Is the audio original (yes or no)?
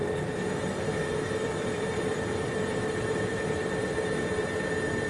no